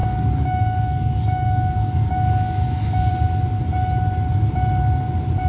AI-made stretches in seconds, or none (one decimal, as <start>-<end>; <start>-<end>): 0.0-3.1